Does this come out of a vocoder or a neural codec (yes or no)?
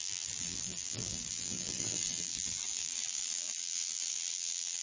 yes